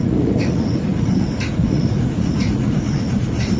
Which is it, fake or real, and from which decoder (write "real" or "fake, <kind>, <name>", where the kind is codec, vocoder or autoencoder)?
fake, vocoder, Vocos